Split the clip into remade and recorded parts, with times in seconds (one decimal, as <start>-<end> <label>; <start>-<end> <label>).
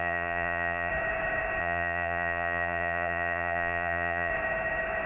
0.0-0.9 remade; 0.9-1.6 recorded; 1.6-4.3 remade; 4.3-5.1 recorded